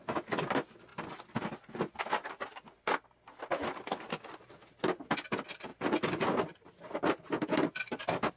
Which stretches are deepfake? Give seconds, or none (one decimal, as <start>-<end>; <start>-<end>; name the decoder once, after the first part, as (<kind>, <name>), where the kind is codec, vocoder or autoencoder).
none